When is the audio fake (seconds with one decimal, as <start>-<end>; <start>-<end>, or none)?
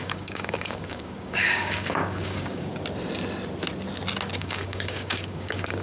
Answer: 0.0-2.7; 4.3-5.8